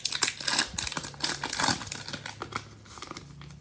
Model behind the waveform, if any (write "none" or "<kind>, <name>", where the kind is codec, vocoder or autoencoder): none